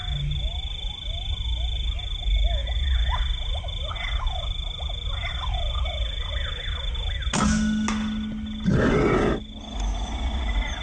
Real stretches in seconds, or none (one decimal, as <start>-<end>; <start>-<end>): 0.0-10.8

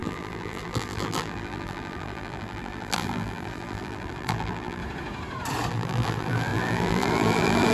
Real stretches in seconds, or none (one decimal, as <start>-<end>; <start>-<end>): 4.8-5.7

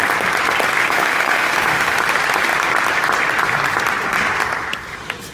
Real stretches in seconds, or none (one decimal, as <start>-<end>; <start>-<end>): 0.0-0.8; 2.0-5.3

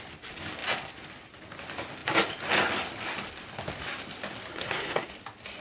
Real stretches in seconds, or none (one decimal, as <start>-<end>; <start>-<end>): 0.0-4.5; 5.1-5.6